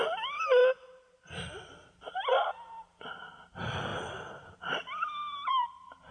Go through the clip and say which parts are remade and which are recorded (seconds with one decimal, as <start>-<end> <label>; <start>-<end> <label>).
0.0-0.6 remade; 0.6-1.6 recorded; 1.6-6.1 remade